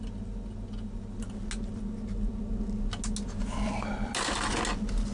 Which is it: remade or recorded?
recorded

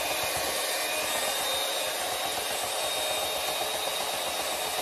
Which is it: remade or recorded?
recorded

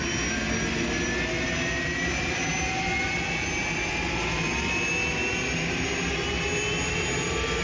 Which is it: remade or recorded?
recorded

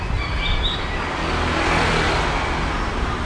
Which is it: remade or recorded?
recorded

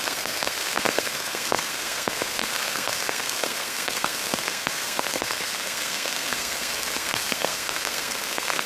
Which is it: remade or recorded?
remade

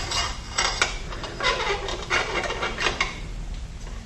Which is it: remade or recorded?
recorded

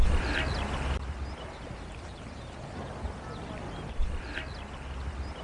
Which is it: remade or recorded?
recorded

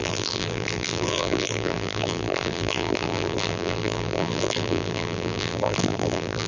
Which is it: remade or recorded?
remade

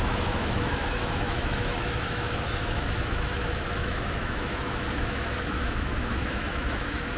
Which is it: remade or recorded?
remade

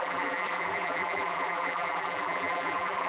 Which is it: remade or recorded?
remade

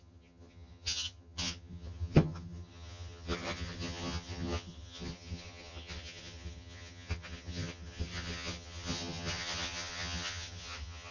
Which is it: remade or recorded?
remade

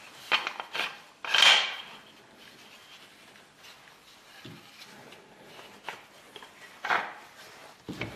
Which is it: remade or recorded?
recorded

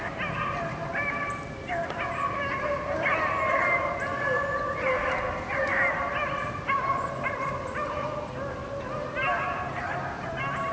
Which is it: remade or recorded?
recorded